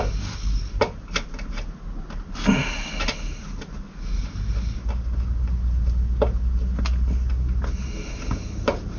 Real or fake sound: real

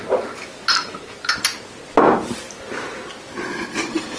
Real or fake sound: real